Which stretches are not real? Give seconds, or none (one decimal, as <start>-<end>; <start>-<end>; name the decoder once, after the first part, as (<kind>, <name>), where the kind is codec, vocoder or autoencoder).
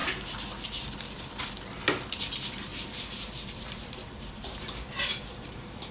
2.7-5.9 (vocoder, BigVGAN v2)